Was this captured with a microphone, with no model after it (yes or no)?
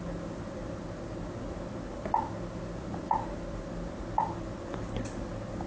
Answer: yes